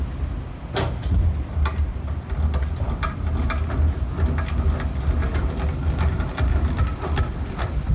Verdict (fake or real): real